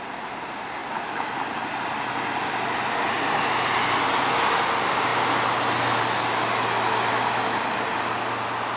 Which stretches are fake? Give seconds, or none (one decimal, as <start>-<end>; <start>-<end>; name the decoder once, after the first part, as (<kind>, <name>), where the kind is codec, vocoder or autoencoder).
none

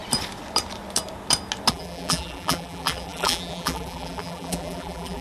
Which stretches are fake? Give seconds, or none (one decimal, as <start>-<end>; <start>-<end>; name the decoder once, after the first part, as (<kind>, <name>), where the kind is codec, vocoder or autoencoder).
1.7-5.2 (vocoder, BigVGAN v2)